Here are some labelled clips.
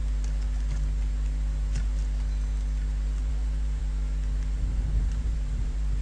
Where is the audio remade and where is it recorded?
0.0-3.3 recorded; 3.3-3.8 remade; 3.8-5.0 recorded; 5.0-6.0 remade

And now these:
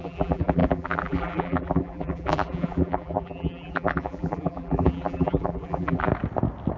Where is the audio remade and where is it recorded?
0.0-6.1 remade; 6.1-6.8 recorded

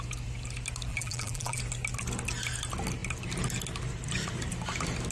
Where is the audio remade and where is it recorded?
0.0-0.9 recorded; 0.9-1.6 remade; 1.6-5.1 recorded

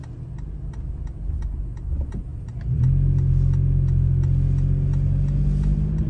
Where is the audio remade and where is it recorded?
0.0-6.1 recorded

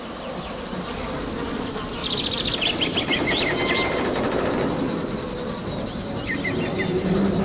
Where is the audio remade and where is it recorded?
0.0-2.0 recorded; 2.0-4.5 remade; 4.5-7.4 recorded

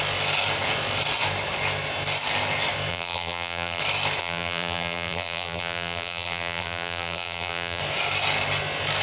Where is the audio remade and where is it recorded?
0.0-2.9 recorded; 2.9-3.8 remade; 3.8-4.2 recorded; 4.2-7.8 remade; 7.8-9.0 recorded

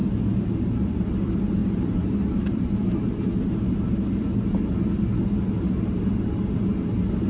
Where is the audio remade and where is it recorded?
0.0-7.3 remade

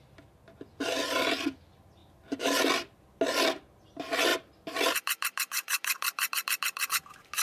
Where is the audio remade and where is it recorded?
0.0-2.0 recorded; 2.0-3.2 remade; 3.2-4.3 recorded; 4.3-6.9 remade; 6.9-7.4 recorded